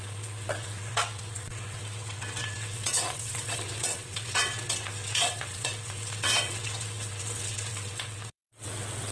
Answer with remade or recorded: remade